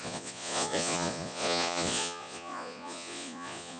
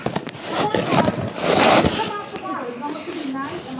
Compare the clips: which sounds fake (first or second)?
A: first